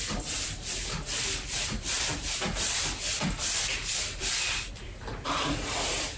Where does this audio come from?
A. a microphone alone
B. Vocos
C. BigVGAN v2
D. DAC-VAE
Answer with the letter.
C